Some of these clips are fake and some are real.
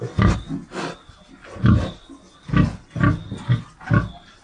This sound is real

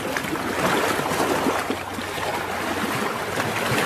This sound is real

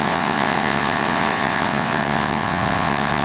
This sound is fake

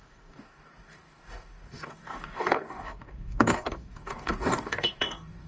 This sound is fake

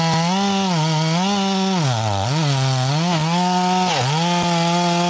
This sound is real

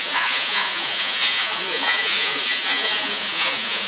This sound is fake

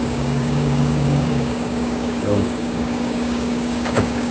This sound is fake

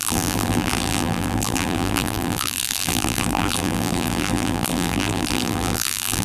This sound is fake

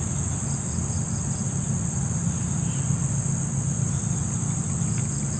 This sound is real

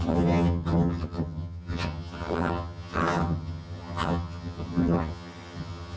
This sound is fake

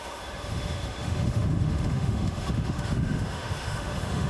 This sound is fake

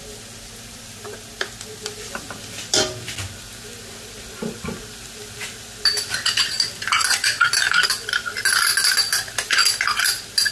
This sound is real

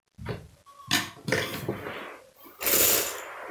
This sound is real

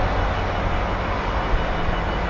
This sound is real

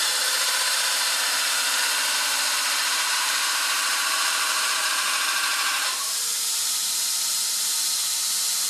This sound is fake